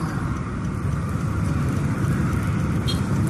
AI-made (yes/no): no